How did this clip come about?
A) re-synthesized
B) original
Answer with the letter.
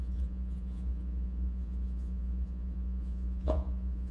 A